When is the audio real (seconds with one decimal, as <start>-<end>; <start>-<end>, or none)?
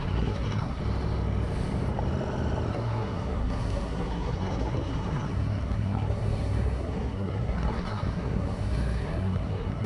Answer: 0.8-2.7